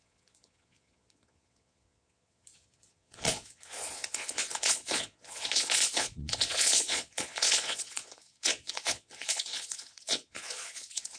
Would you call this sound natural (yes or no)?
no